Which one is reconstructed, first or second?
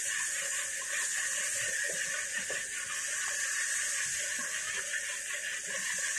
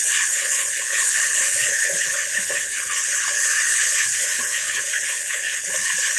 second